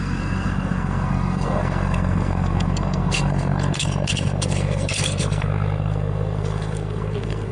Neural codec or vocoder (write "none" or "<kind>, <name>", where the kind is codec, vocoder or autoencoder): codec, SNAC